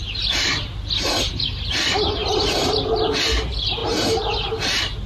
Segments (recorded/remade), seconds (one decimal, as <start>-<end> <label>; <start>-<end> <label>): 0.0-2.2 recorded; 2.2-2.8 remade; 2.8-5.1 recorded